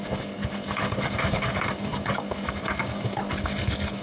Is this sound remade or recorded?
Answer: remade